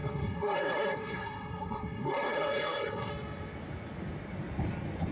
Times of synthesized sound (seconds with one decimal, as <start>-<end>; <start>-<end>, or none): 0.0-3.1